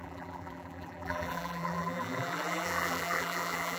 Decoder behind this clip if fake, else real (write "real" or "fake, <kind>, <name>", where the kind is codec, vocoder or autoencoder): fake, vocoder, BigVGAN v2